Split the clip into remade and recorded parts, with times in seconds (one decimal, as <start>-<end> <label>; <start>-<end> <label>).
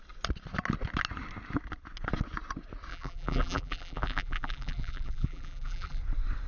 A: 0.0-2.9 recorded; 2.9-6.0 remade; 6.0-6.5 recorded